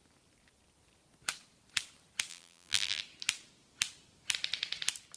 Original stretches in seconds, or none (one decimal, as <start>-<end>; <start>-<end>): 0.0-2.3; 3.0-5.2